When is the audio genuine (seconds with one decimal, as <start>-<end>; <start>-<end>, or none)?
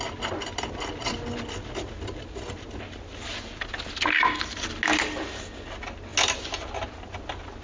0.0-7.6